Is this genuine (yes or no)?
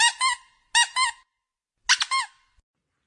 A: yes